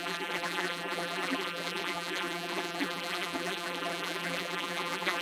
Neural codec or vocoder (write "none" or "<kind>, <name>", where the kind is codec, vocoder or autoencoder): vocoder, BigVGAN v2